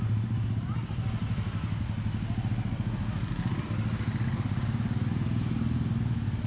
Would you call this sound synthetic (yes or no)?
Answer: no